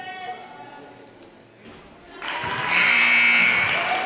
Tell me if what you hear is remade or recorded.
recorded